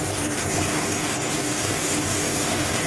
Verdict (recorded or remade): remade